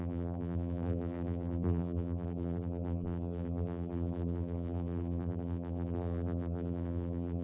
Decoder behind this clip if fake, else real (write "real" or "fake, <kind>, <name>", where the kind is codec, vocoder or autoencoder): fake, vocoder, BigVGAN v2